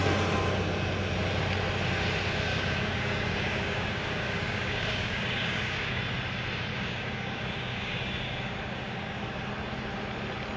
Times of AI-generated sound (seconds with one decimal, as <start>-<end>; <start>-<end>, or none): 2.5-6.0; 6.7-9.5